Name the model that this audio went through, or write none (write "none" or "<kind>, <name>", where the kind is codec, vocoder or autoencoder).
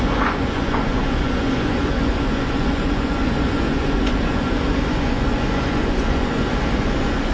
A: vocoder, Vocos